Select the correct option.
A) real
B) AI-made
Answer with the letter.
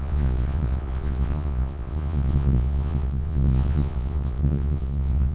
B